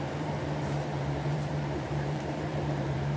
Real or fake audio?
fake